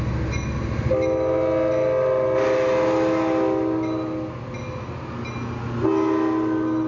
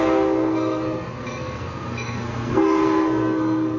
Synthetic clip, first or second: second